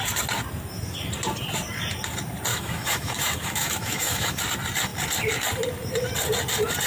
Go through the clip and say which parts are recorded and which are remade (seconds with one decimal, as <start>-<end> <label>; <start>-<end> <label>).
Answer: 0.0-2.5 recorded; 2.5-4.4 remade; 4.4-6.9 recorded

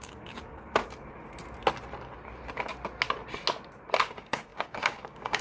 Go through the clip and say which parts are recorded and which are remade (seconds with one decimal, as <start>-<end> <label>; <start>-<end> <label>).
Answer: 0.0-0.8 remade; 0.8-4.0 recorded; 4.0-5.4 remade

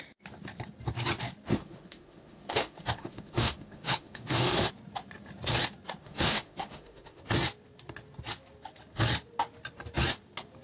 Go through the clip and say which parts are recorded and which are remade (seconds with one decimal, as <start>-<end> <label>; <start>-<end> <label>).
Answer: 0.0-1.5 recorded; 1.5-4.7 remade; 4.7-6.0 recorded; 6.0-7.2 remade; 7.2-10.6 recorded

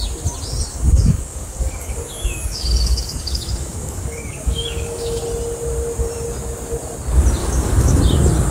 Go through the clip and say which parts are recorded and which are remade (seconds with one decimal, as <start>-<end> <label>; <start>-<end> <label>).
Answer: 0.0-0.7 recorded; 0.7-5.2 remade; 5.2-7.4 recorded; 7.4-8.0 remade; 8.0-8.5 recorded